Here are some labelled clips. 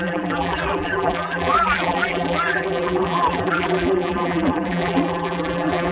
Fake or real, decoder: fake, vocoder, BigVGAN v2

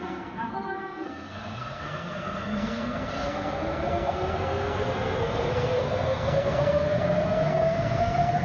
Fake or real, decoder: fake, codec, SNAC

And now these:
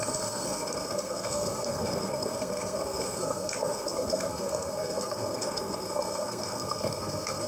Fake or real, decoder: fake, codec, SNAC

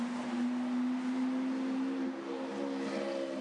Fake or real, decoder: real